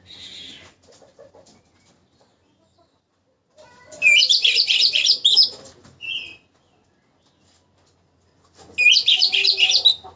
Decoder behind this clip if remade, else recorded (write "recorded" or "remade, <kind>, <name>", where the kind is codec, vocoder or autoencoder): recorded